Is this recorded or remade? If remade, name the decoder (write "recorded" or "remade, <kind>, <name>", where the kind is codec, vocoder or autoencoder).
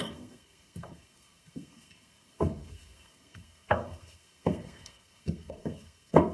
remade, codec, SNAC